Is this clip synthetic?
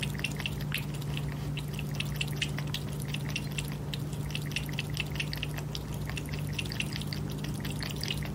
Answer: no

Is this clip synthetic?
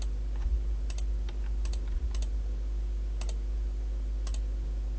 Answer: no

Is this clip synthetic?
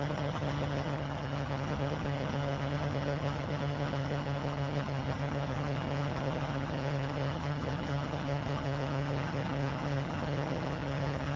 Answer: yes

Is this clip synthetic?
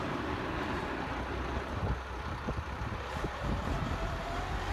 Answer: yes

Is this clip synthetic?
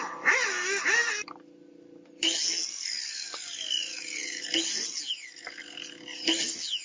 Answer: no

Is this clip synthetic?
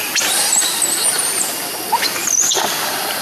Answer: no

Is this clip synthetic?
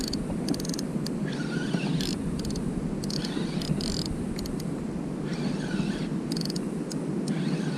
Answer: no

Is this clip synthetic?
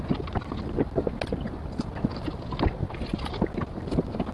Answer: no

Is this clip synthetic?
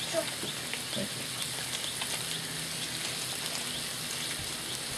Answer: no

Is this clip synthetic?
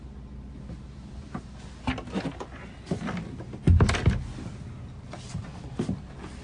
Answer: no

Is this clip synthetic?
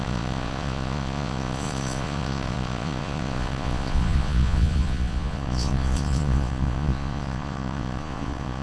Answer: yes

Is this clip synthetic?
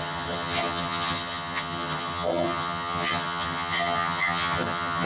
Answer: yes